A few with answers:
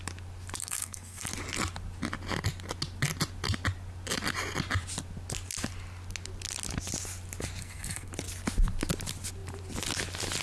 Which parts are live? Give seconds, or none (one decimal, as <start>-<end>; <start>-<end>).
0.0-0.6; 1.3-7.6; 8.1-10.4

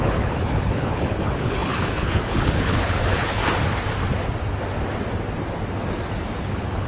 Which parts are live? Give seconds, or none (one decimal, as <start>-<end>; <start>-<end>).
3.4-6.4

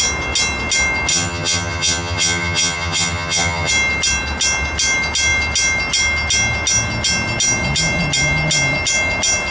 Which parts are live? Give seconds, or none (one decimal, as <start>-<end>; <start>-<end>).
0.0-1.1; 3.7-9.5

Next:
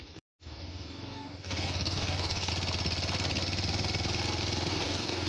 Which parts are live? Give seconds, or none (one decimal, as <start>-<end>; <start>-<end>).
2.5-4.7

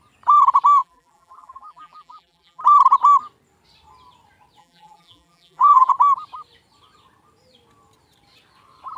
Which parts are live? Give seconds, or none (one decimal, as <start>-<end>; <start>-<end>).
0.0-0.8; 2.6-4.6; 5.9-9.0

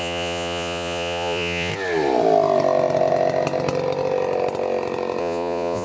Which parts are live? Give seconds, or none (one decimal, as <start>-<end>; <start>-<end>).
1.7-5.2